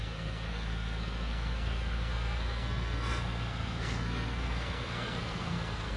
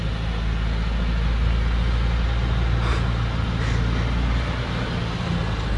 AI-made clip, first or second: first